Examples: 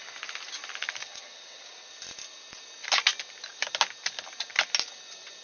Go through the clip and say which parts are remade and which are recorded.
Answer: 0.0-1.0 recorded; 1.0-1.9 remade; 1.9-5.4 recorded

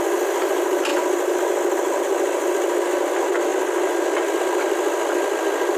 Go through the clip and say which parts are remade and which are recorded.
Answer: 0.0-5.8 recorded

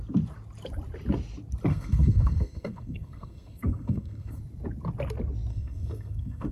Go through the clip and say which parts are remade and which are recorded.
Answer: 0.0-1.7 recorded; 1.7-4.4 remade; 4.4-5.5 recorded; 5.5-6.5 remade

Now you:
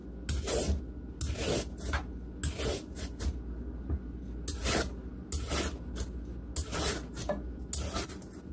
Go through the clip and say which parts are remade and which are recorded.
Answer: 0.0-8.5 recorded

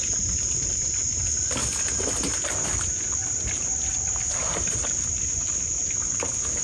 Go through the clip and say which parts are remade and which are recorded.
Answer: 0.0-6.6 recorded